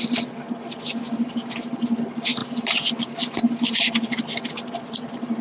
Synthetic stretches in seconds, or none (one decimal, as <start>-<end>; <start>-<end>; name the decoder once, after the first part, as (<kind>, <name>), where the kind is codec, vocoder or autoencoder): none